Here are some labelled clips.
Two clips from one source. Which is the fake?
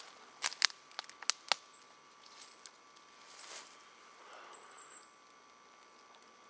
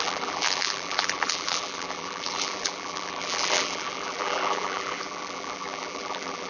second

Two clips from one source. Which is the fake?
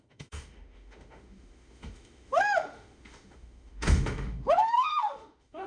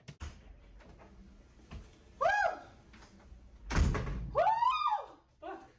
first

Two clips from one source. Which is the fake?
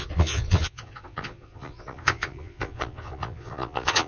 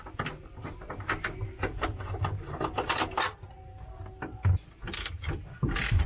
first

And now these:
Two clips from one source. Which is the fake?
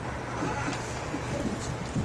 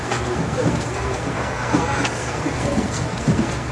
second